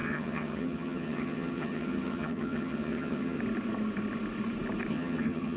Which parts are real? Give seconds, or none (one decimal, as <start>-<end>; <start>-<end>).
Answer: 3.4-4.9